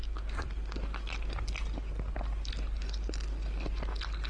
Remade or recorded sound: recorded